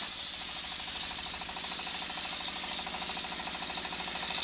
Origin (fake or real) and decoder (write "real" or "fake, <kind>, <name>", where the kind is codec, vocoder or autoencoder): real